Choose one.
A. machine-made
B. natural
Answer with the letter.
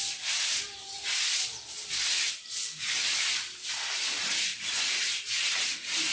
B